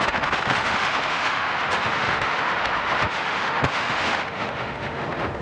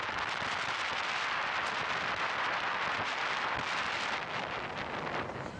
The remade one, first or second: first